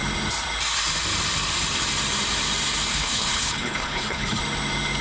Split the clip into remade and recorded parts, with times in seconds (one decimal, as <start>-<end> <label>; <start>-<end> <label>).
0.0-2.9 recorded; 2.9-4.4 remade; 4.4-5.0 recorded